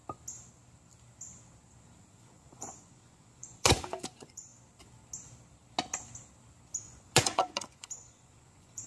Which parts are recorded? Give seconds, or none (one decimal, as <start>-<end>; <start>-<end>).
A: 0.0-2.0; 4.5-6.8